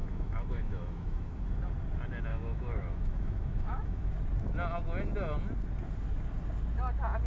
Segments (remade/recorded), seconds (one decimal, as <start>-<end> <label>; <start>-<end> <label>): 0.0-1.4 remade; 1.4-2.3 recorded; 2.3-4.1 remade; 4.1-7.3 recorded